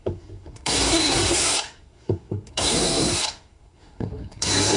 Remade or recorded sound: remade